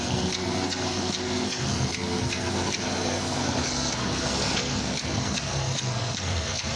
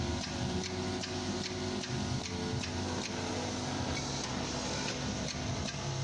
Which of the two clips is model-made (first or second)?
first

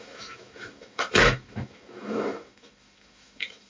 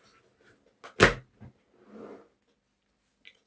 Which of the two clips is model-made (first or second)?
first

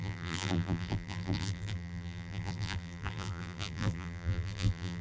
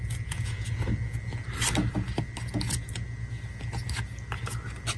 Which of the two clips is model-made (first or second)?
first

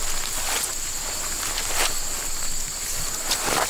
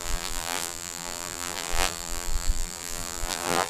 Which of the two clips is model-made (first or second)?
second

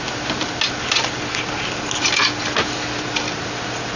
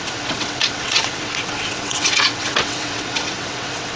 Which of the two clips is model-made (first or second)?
second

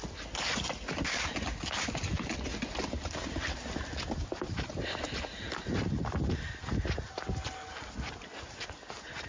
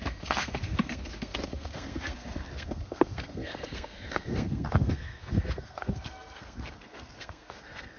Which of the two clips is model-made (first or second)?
second